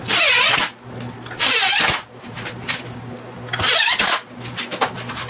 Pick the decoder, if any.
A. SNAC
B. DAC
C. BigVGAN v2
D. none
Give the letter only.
D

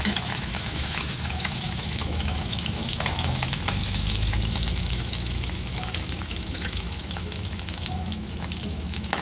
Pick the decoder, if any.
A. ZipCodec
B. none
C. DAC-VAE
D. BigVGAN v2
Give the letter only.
C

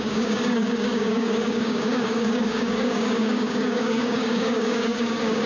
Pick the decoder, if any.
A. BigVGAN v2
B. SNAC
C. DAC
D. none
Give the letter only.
C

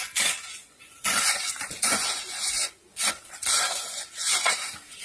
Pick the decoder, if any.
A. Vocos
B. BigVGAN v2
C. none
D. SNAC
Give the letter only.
A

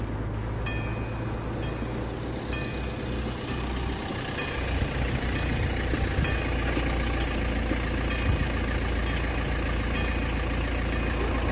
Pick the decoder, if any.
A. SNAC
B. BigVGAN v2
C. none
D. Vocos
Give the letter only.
C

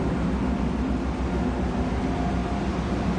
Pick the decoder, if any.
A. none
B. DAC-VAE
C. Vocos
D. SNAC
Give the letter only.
A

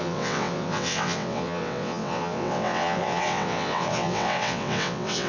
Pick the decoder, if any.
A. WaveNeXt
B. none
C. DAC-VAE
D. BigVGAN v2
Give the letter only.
A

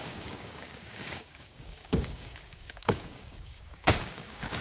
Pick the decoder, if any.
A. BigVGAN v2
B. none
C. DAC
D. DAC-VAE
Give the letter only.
C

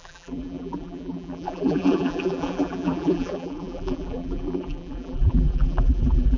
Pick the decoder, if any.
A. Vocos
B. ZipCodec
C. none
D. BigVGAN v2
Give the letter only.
D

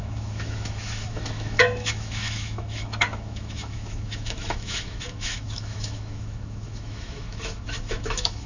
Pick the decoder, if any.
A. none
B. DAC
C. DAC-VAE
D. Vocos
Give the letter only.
C